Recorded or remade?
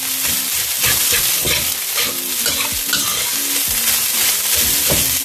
recorded